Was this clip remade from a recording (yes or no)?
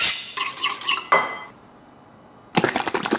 no